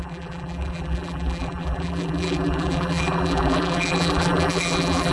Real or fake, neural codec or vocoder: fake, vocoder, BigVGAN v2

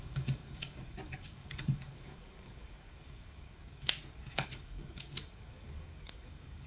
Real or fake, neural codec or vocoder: fake, codec, DAC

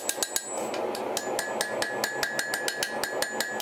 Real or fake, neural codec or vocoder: real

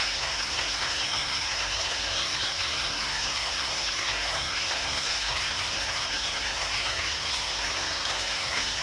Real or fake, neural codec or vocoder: fake, codec, SNAC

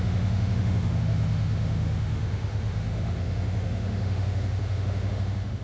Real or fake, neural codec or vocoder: fake, autoencoder, DAC-VAE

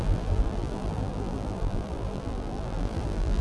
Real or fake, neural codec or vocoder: fake, vocoder, BigVGAN v2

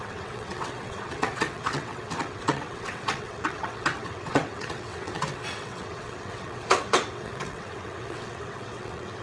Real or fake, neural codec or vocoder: fake, vocoder, WaveNeXt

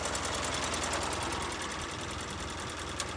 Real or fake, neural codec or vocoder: real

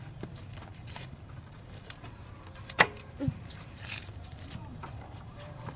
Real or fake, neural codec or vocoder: fake, vocoder, BigVGAN v2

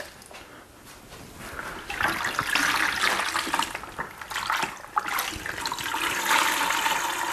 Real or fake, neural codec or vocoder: real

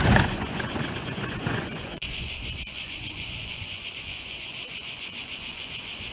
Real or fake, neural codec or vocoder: fake, vocoder, Vocos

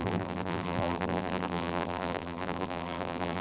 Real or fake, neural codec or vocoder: fake, vocoder, BigVGAN v2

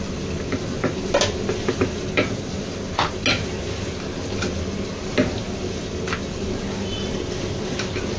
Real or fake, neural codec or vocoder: real